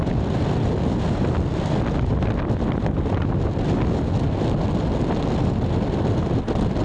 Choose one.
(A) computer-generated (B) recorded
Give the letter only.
B